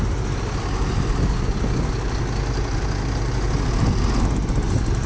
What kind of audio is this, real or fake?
real